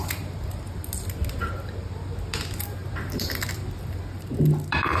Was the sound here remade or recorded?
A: recorded